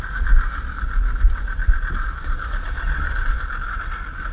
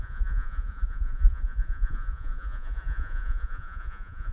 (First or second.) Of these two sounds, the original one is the first